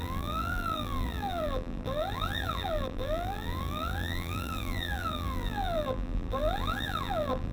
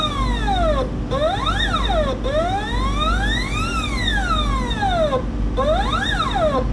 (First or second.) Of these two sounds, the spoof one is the first